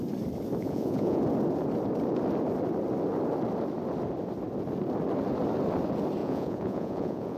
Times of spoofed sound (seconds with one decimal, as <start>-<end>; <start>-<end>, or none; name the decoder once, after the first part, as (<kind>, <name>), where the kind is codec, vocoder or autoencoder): 0.6-1.2 (vocoder, Vocos); 6.2-7.4